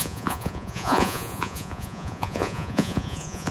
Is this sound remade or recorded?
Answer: remade